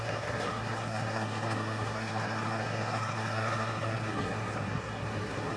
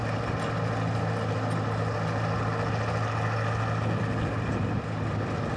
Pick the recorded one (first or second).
second